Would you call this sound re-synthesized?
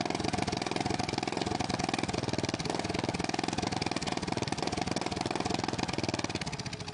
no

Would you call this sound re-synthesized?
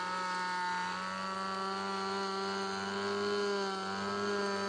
no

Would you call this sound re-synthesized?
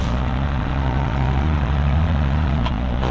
yes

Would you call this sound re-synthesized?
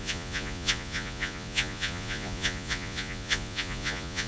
yes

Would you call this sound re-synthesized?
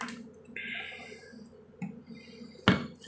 no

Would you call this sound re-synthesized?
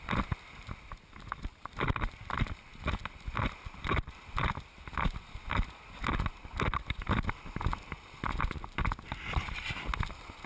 no